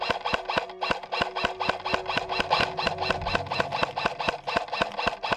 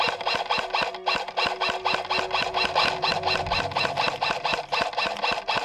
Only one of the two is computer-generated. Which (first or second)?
second